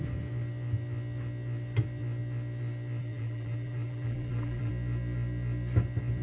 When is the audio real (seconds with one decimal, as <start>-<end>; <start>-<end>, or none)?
0.0-3.0; 4.7-6.2

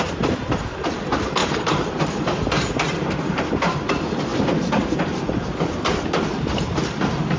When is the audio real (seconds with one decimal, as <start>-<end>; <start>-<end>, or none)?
0.0-1.4; 3.9-7.4

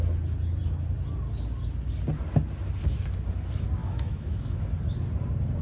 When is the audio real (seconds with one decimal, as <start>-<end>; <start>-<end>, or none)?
0.0-3.8; 4.6-5.6

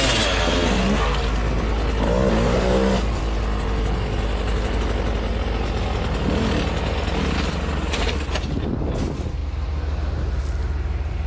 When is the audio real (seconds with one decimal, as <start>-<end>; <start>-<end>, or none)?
0.0-11.3